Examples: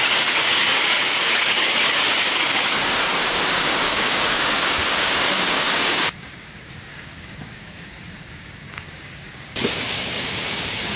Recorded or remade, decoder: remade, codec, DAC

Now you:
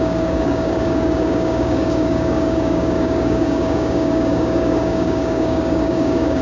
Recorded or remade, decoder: remade, codec, DAC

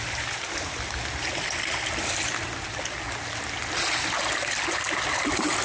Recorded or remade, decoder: recorded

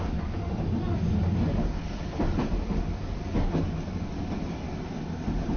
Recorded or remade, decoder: recorded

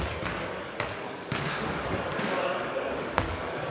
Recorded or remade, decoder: remade, codec, DAC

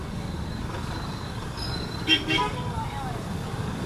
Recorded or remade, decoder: remade, codec, DAC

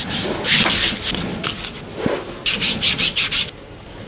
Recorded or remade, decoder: recorded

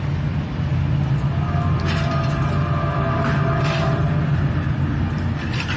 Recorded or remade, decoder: recorded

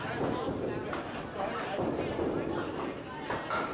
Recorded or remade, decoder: recorded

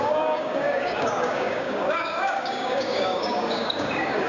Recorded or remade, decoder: remade, codec, DAC